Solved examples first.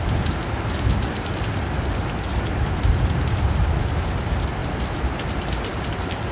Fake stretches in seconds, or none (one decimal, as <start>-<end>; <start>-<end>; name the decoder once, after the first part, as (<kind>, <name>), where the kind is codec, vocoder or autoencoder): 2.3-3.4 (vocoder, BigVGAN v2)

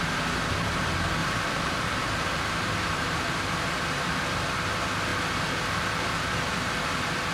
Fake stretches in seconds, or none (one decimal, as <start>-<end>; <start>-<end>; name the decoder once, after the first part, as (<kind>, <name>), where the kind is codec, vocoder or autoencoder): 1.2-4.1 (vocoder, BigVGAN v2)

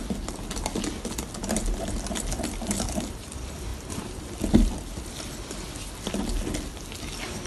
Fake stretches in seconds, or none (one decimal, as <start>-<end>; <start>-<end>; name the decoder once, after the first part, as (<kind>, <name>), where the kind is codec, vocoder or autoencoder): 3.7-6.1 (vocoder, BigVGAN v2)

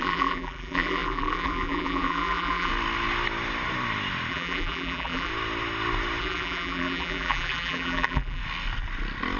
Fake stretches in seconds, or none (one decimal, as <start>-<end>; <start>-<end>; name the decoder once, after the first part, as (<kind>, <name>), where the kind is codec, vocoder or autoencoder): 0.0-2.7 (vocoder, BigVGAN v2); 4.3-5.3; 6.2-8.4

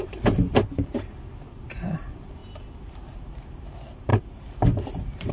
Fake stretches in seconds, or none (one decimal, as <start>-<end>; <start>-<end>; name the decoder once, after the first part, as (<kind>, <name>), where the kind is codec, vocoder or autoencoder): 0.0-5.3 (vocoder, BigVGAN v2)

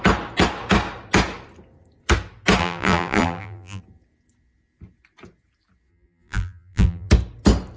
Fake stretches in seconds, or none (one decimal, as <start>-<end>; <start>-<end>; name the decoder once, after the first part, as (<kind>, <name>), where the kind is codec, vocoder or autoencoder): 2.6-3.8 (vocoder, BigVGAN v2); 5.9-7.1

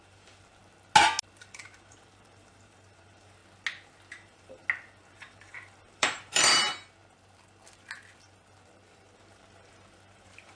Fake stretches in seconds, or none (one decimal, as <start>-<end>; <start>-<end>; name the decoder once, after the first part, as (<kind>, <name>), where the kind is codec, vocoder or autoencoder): 0.0-0.6 (vocoder, BigVGAN v2); 1.4-3.4; 4.1-4.6; 5.1-6.7; 9.2-10.6